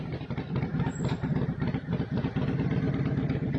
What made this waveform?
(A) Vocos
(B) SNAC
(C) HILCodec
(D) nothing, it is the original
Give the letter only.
D